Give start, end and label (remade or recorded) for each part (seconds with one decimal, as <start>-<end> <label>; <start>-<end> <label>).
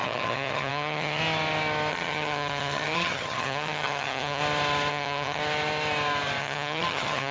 0.0-1.2 remade; 1.2-1.9 recorded; 1.9-4.4 remade; 4.4-4.9 recorded; 4.9-5.4 remade; 5.4-6.4 recorded; 6.4-7.3 remade